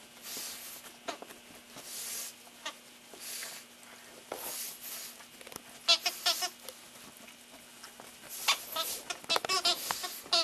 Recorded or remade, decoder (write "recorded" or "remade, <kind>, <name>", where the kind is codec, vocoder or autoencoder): recorded